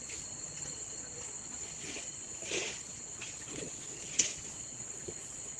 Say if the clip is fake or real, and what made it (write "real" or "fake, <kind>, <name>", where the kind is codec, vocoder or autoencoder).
fake, vocoder, Vocos